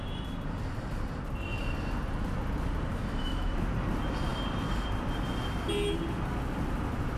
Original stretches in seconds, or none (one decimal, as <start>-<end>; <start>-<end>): 0.0-2.9; 3.5-7.2